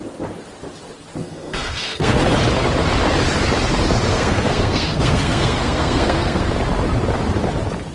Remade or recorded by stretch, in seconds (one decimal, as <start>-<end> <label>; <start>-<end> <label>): 0.0-1.2 recorded; 1.2-2.2 remade; 2.2-4.1 recorded; 4.1-6.5 remade; 6.5-7.9 recorded